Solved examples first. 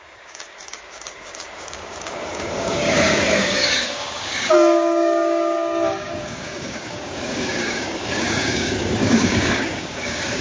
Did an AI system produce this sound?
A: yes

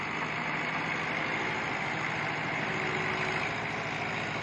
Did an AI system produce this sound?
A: no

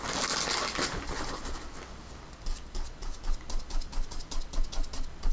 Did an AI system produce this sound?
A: no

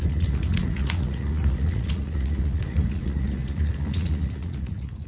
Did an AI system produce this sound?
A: yes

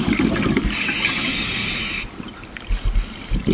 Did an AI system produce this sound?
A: no